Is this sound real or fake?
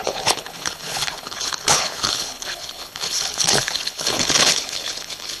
fake